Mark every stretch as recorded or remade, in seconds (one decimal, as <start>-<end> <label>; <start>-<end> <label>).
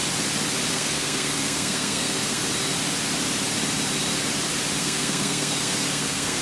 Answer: 0.0-0.7 recorded; 0.7-2.4 remade; 2.4-4.8 recorded; 4.8-6.4 remade